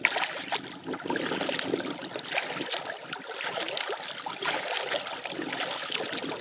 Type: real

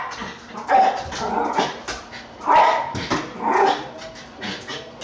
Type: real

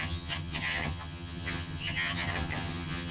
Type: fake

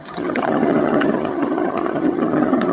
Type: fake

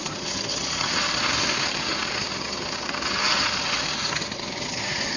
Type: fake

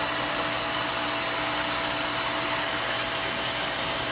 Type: real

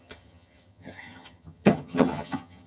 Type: fake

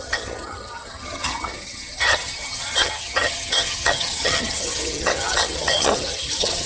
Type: fake